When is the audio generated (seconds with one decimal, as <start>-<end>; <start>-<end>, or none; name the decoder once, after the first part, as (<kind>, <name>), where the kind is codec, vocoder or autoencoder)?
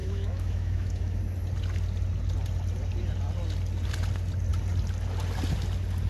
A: 0.0-1.2 (autoencoder, DAC-VAE)